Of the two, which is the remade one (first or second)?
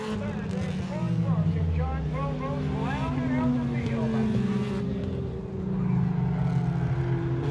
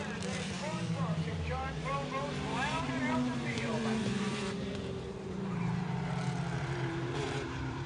second